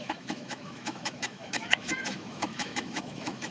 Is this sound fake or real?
fake